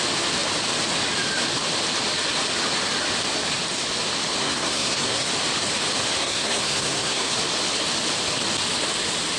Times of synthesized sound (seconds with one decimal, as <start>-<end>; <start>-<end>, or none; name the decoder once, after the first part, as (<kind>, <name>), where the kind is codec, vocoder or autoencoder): 4.4-5.3 (codec, SNAC); 6.2-7.3